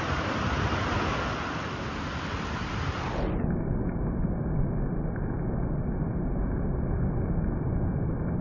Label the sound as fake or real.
real